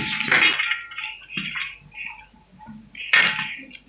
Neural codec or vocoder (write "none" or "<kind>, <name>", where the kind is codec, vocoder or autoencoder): none